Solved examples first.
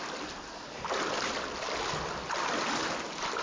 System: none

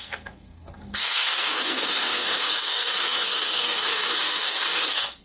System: codec, SNAC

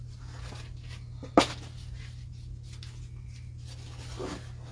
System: none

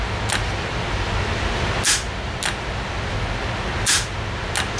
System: none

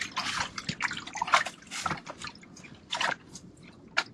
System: none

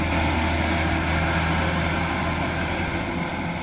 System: none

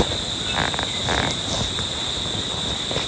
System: none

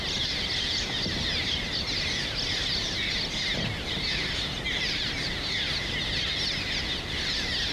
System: none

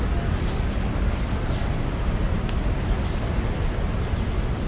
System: none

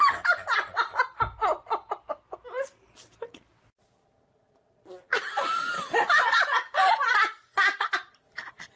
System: none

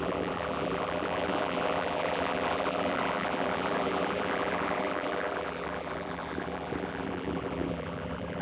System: vocoder, BigVGAN v2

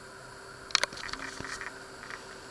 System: none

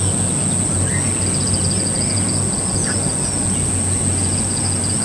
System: none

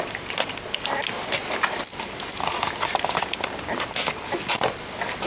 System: none